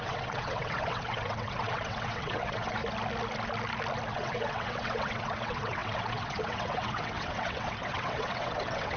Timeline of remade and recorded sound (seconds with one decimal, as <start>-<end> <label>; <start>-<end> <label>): 0.0-2.8 remade; 2.8-4.1 recorded; 4.1-9.0 remade